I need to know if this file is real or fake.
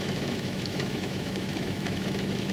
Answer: fake